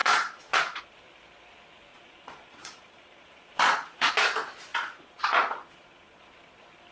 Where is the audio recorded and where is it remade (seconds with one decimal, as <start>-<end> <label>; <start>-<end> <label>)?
0.0-0.8 remade; 0.8-1.9 recorded; 1.9-4.1 remade; 4.1-4.7 recorded; 4.7-6.3 remade; 6.3-6.9 recorded